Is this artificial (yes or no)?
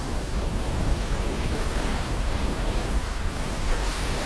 yes